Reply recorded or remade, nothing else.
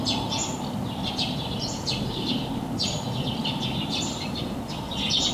recorded